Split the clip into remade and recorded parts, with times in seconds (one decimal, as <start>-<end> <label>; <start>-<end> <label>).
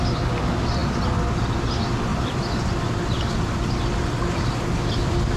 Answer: 0.0-2.1 recorded; 2.1-5.4 remade